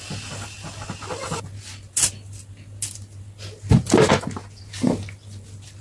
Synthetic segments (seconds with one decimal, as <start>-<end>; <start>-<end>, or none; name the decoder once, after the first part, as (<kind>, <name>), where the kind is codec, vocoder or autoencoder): none